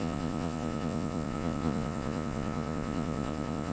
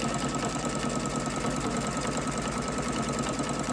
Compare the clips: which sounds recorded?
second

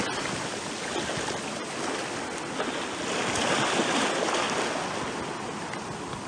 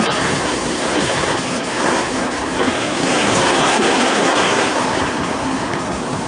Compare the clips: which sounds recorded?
first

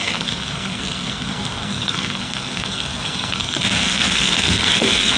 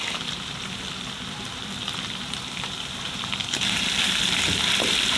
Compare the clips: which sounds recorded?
second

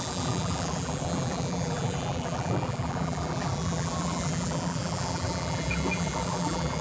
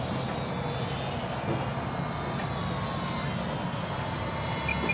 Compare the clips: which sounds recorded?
second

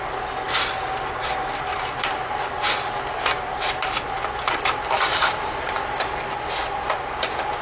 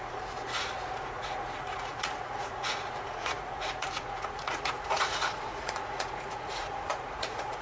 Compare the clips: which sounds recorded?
first